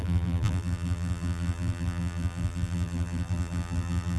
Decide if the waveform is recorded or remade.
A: remade